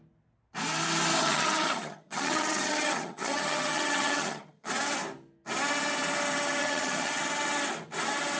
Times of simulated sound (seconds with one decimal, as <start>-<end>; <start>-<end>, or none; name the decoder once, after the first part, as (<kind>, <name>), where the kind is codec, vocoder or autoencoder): 1.2-4.7 (vocoder, HiFi-GAN); 6.6-7.2